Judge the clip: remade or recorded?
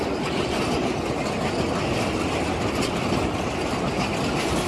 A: recorded